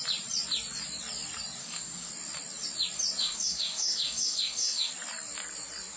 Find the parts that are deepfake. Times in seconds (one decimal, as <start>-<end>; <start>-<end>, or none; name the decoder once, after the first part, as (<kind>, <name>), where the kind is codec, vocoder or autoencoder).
1.6-2.1 (codec, DAC); 3.2-4.9